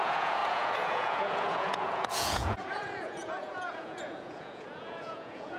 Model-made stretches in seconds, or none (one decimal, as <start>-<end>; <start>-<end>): 0.0-5.6